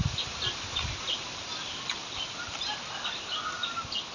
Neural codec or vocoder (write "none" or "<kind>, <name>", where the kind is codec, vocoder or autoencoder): none